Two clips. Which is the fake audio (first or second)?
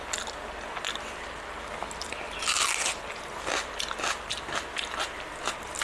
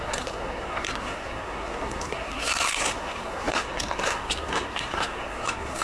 second